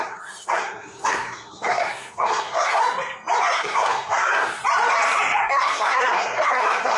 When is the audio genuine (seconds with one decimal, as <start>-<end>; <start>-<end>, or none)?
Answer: 2.8-3.5; 4.6-5.4